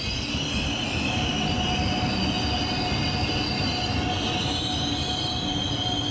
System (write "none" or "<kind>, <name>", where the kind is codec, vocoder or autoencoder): none